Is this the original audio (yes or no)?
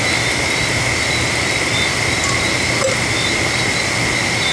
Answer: yes